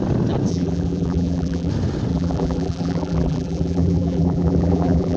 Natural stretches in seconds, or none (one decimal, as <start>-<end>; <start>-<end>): 0.0-0.5; 1.7-2.1